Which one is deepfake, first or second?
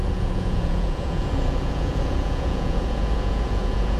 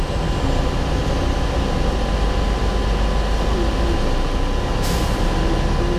first